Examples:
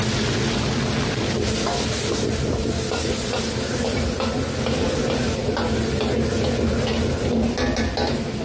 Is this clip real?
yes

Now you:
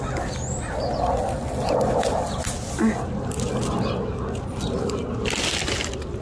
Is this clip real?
yes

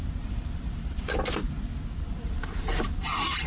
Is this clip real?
no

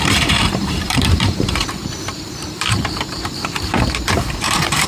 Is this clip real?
no